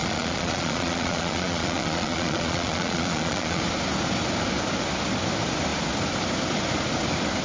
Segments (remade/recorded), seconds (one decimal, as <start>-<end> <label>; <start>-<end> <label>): 0.0-3.6 remade; 3.6-7.4 recorded